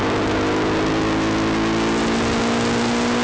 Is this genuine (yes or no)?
yes